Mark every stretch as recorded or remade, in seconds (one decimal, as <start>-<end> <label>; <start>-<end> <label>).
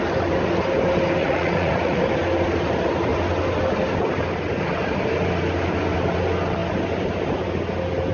0.0-1.2 recorded; 1.2-2.0 remade; 2.0-8.1 recorded